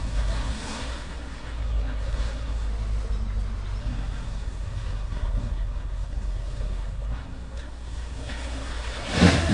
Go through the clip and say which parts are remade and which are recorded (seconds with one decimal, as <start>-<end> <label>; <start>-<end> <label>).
0.0-2.7 remade; 2.7-3.8 recorded; 3.8-9.5 remade